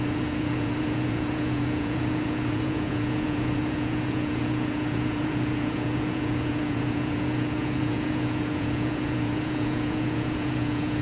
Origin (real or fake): fake